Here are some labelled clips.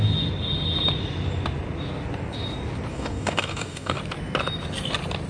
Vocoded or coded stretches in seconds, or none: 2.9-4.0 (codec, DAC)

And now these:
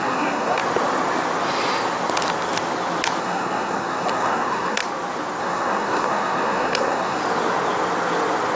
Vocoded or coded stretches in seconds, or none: 0.0-0.6 (codec, SNAC); 3.2-4.8; 5.4-7.2

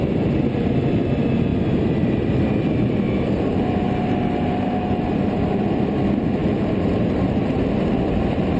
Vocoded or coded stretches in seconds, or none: 1.5-5.8 (vocoder, BigVGAN v2); 6.4-7.7

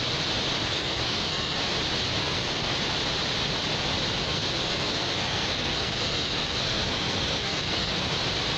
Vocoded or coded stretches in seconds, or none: 0.6-1.6 (codec, SNAC); 2.2-2.7; 4.2-8.1

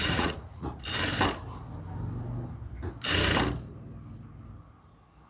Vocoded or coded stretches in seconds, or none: 0.0-0.8 (vocoder, Vocos)

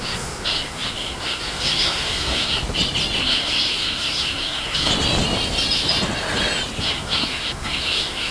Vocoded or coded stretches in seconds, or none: 0.0-2.6 (codec, SNAC); 3.2-4.9; 6.8-8.3